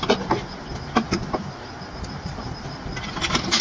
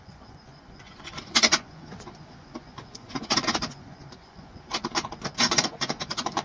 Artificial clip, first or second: second